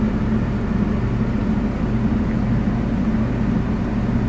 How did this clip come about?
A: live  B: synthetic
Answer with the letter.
A